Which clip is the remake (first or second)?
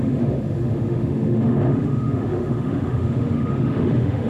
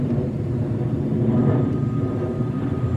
first